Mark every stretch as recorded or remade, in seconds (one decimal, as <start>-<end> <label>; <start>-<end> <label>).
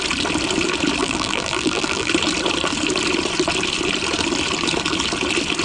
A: 0.0-1.0 recorded; 1.0-2.1 remade; 2.1-5.6 recorded